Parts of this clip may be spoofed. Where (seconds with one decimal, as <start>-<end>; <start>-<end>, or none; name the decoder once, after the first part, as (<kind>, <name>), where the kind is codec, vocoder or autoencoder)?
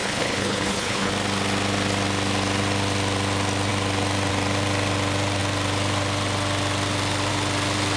0.0-1.1 (codec, HILCodec)